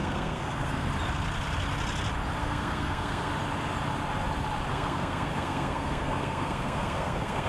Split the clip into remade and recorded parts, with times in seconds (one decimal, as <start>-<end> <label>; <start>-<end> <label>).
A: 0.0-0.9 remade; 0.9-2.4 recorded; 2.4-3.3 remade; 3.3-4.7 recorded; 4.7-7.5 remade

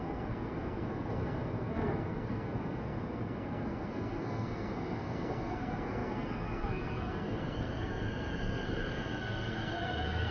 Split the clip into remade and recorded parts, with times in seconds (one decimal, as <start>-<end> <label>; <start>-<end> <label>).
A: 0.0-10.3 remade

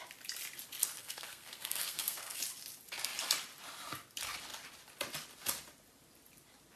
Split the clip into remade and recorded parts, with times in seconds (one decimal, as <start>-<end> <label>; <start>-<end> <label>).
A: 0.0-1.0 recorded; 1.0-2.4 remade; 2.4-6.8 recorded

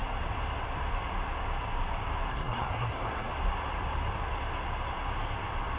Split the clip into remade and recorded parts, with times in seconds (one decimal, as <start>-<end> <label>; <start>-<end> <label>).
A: 0.0-2.3 recorded; 2.3-3.3 remade; 3.3-5.8 recorded

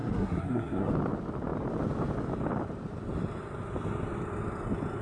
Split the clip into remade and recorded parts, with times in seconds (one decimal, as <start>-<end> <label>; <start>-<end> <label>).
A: 0.0-0.9 remade; 0.9-5.0 recorded